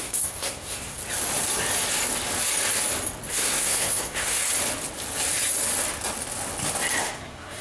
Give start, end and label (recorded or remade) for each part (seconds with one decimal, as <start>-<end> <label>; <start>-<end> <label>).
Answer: 0.0-1.0 remade; 1.0-3.3 recorded; 3.3-4.4 remade; 4.4-7.0 recorded; 7.0-7.6 remade